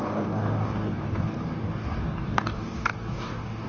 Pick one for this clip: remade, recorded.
remade